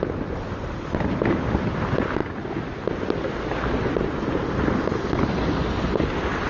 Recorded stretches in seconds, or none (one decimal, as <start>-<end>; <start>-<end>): 0.0-6.5